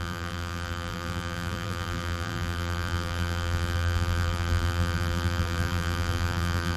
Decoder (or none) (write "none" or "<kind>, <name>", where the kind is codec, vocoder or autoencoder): vocoder, BigVGAN v2